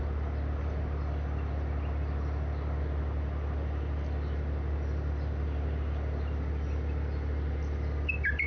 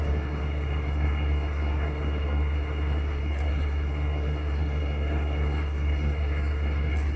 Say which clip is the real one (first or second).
first